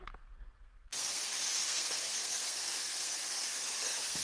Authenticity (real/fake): fake